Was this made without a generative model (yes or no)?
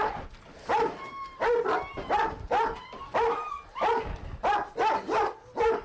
yes